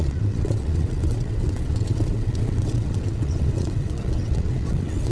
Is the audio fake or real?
fake